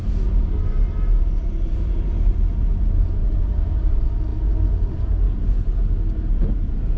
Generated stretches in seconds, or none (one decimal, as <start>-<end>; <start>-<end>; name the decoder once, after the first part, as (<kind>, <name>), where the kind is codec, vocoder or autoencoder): none